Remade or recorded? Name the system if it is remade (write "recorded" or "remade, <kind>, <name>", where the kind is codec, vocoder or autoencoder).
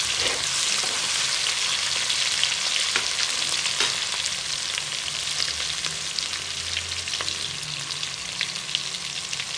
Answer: recorded